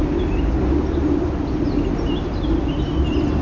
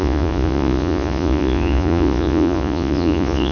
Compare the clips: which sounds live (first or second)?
first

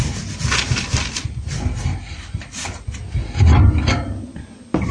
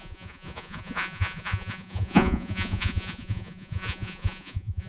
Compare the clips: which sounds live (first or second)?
first